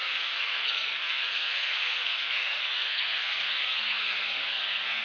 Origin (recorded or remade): remade